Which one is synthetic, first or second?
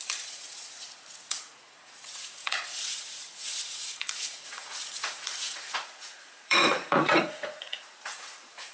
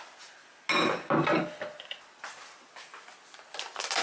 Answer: first